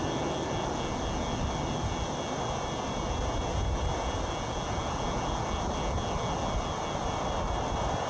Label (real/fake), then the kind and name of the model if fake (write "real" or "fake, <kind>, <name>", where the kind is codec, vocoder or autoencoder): real